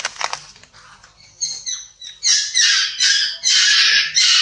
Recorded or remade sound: recorded